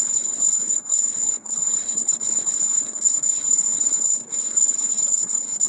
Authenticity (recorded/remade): remade